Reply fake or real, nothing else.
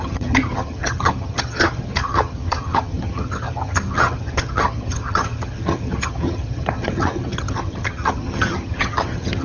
fake